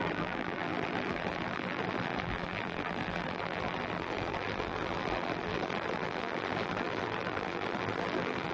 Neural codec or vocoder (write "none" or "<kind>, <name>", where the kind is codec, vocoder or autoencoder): vocoder, BigVGAN v2